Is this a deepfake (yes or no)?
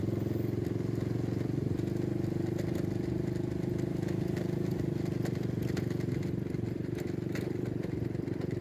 no